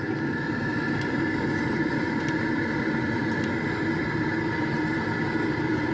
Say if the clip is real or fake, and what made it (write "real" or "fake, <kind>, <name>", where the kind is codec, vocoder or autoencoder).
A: real